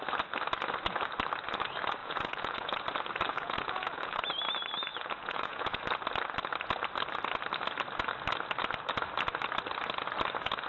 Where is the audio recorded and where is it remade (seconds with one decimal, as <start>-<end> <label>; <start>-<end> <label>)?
0.0-2.0 recorded; 2.0-2.8 remade; 2.8-3.3 recorded; 3.3-4.2 remade; 4.2-4.9 recorded; 4.9-5.8 remade; 5.8-10.7 recorded